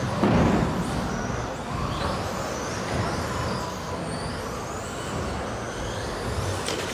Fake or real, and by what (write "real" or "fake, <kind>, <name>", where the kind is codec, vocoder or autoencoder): real